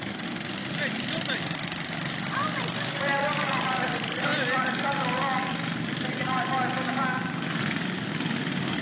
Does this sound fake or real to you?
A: real